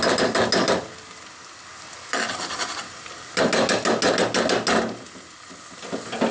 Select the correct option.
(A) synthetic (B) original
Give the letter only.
B